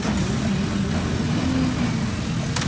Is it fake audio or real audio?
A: real